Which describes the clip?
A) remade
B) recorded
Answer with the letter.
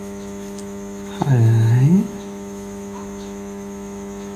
A